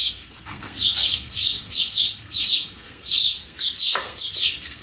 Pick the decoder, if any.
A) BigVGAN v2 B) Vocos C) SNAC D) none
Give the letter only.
C